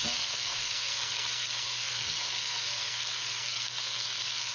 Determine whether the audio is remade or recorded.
remade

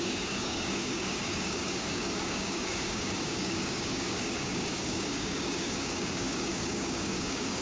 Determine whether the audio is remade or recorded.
remade